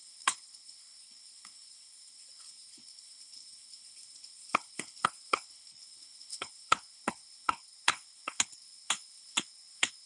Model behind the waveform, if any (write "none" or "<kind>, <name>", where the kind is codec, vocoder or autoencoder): codec, HILCodec